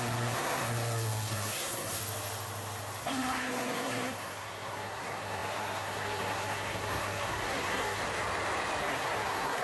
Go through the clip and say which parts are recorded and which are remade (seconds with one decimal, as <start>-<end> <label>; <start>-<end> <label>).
0.0-2.0 remade; 2.0-3.0 recorded; 3.0-8.0 remade; 8.0-8.8 recorded; 8.8-9.6 remade